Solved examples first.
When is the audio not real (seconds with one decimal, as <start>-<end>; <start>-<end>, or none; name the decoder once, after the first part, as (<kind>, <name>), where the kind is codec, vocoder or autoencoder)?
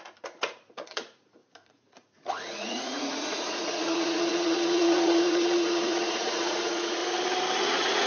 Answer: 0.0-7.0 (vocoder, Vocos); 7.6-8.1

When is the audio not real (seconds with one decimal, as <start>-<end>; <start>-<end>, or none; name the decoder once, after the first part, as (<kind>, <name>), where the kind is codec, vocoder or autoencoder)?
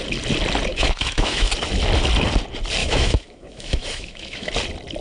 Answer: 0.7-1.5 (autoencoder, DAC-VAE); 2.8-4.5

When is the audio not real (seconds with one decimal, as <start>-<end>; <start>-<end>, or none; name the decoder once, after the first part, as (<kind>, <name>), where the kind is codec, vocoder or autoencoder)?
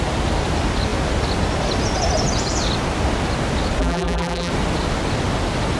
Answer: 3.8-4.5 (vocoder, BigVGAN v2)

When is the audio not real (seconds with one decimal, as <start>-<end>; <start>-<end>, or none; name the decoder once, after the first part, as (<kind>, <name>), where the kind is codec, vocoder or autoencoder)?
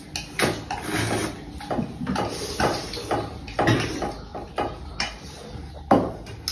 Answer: none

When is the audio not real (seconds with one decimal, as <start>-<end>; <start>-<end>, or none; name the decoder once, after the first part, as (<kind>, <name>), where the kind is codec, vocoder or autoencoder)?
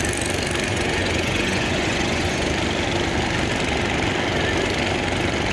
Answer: 0.7-2.5 (vocoder, Vocos)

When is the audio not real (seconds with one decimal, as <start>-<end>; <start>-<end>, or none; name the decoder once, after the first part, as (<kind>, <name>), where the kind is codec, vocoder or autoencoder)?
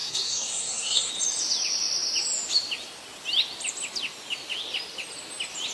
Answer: 0.0-1.1 (codec, SNAC)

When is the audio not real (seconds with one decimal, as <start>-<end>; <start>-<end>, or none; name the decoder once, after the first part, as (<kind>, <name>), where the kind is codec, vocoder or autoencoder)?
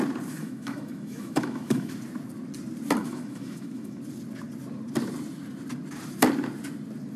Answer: 0.4-1.9 (autoencoder, DAC-VAE); 3.0-4.0